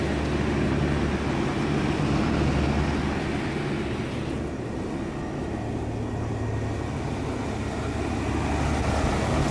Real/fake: real